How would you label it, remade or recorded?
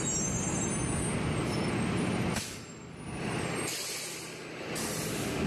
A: recorded